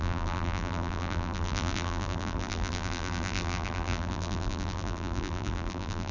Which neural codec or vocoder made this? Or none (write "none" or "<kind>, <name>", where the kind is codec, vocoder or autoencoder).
vocoder, BigVGAN v2